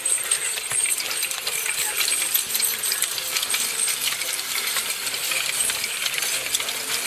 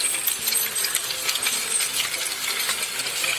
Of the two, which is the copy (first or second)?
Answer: first